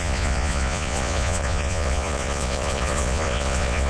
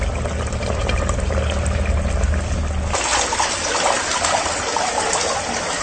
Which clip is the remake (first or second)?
first